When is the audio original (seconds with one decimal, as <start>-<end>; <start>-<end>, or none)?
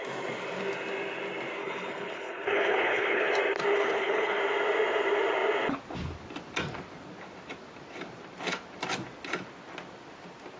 0.0-1.6; 3.3-3.7; 4.4-10.6